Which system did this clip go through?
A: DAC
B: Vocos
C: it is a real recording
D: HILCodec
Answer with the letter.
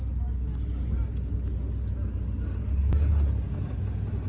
C